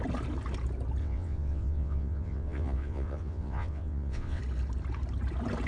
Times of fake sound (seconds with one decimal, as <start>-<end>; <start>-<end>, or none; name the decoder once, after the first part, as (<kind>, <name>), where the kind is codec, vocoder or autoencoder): 1.0-4.4 (vocoder, WaveNeXt)